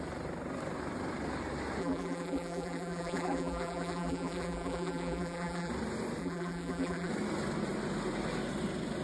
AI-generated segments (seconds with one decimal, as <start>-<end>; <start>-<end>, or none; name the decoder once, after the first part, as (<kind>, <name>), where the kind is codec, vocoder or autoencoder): 1.8-5.7 (vocoder, BigVGAN v2); 6.2-7.1